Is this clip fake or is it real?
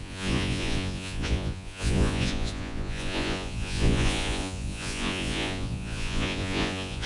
fake